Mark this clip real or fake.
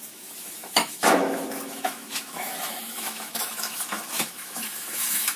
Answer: fake